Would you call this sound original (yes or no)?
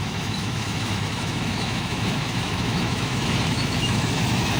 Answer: no